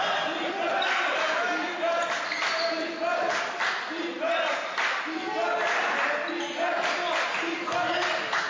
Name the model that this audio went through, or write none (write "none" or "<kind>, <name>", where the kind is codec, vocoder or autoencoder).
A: none